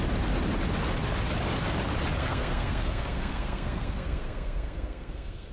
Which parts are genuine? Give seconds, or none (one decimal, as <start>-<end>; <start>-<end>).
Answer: 0.0-2.2